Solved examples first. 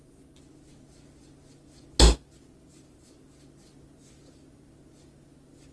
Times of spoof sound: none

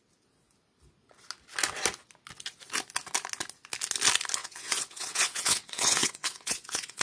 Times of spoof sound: 4.4-7.0 (vocoder, WaveNeXt)